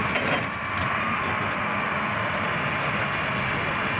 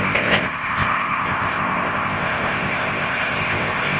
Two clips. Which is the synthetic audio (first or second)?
second